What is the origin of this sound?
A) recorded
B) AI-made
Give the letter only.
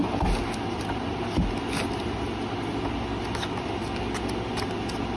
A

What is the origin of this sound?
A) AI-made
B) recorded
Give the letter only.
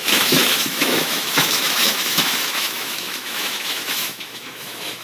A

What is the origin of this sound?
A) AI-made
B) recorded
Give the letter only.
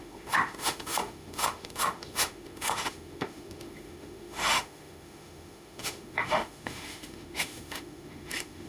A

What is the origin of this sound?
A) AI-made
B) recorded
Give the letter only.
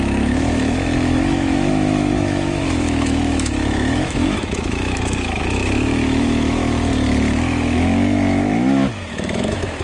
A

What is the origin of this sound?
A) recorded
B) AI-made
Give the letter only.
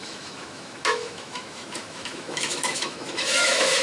B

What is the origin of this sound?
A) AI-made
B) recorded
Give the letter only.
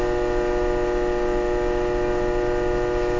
B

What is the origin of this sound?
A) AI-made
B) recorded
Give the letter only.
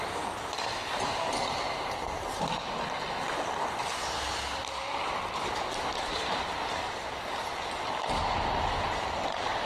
B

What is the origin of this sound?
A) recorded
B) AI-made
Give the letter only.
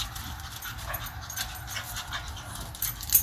A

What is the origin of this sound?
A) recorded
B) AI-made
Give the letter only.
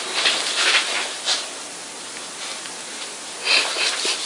A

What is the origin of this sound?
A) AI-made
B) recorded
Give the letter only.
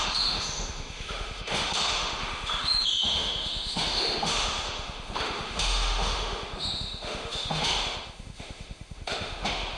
A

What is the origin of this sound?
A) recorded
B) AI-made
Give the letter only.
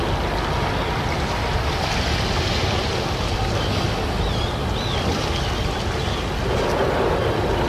A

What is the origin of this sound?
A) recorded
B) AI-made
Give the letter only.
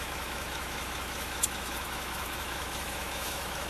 B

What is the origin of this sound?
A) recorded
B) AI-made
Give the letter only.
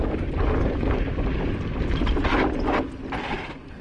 A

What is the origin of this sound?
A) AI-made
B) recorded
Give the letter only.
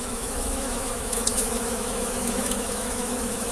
A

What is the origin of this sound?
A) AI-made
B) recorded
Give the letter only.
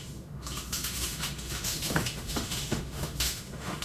A